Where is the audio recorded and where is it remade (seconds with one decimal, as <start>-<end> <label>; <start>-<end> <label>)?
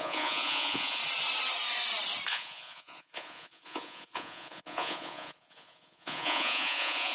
0.0-1.0 remade; 1.0-2.3 recorded; 2.3-7.1 remade